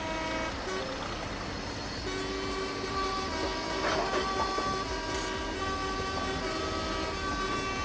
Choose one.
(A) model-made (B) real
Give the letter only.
B